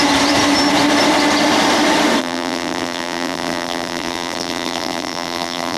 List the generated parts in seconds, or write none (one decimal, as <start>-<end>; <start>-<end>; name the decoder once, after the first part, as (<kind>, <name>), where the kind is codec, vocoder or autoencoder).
2.2-5.8 (vocoder, BigVGAN v2)